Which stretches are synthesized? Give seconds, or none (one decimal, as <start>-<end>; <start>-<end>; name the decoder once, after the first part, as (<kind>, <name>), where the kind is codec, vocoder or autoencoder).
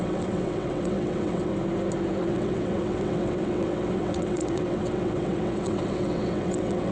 0.0-1.5 (vocoder, WaveNeXt); 2.2-6.9